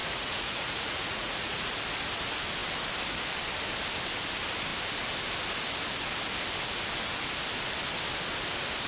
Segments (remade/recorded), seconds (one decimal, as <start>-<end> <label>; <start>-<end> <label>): 0.0-1.8 remade; 1.8-8.9 recorded